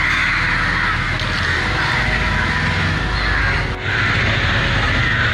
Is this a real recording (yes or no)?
yes